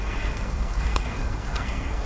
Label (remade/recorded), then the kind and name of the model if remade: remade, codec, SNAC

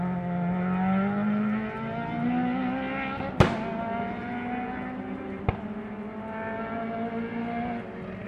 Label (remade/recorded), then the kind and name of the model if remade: recorded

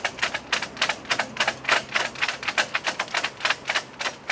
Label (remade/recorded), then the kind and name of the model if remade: recorded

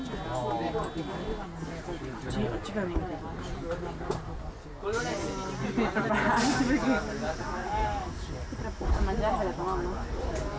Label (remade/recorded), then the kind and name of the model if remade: recorded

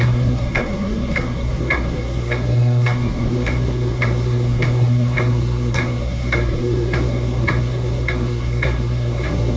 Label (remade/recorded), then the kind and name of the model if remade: remade, codec, SNAC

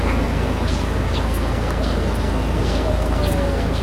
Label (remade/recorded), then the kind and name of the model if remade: remade, codec, SNAC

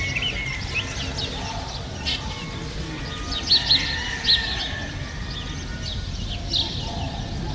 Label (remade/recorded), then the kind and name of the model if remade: recorded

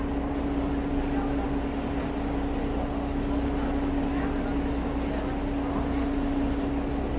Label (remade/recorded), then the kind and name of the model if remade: recorded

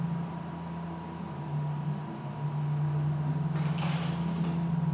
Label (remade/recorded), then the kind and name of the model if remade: recorded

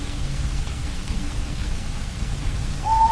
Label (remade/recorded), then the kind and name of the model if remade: remade, codec, SNAC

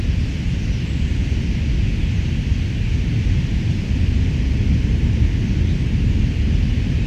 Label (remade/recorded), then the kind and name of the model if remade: recorded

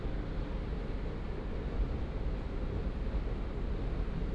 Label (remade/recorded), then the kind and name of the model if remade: recorded